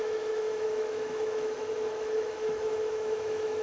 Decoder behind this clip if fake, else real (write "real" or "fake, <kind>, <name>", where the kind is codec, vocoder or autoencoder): fake, autoencoder, DAC-VAE